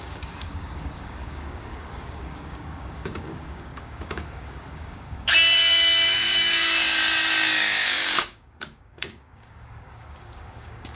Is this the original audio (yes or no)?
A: no